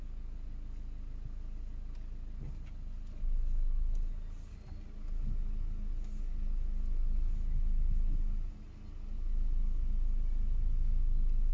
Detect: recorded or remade recorded